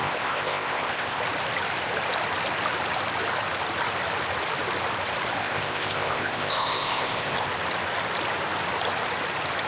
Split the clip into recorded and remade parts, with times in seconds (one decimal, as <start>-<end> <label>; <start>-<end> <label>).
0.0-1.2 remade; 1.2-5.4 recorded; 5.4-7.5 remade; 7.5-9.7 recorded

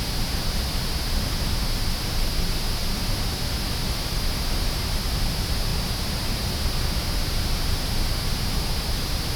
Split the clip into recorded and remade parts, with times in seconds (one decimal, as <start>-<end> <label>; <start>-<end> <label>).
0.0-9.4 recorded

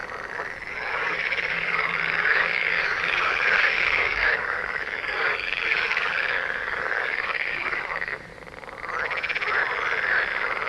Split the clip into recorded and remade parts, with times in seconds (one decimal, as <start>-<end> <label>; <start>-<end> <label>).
0.0-0.7 recorded; 0.7-8.3 remade; 8.3-10.7 recorded

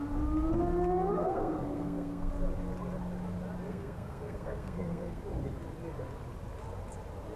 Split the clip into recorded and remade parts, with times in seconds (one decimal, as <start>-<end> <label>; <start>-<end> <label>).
0.0-1.1 recorded; 1.1-2.3 remade; 2.3-3.7 recorded; 3.7-5.2 remade; 5.2-7.4 recorded

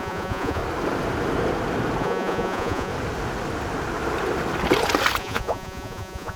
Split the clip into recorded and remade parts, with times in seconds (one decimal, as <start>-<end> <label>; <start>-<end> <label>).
0.0-0.6 remade; 0.6-2.0 recorded; 2.0-2.9 remade; 2.9-5.2 recorded; 5.2-6.4 remade

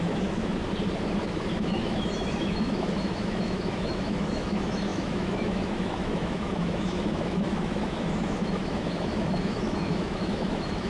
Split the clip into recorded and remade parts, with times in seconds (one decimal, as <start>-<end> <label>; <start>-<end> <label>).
0.0-0.6 remade; 0.6-1.2 recorded; 1.2-10.9 remade

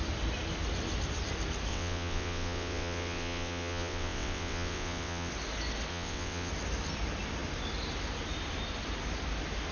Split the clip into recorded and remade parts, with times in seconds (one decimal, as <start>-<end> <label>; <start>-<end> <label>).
0.0-1.7 recorded; 1.7-5.3 remade; 5.3-5.9 recorded; 5.9-6.5 remade; 6.5-9.7 recorded

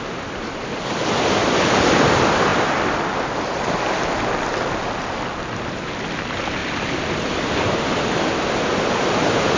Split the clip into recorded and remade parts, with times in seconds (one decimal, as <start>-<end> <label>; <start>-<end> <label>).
0.0-6.6 recorded; 6.6-8.8 remade; 8.8-9.6 recorded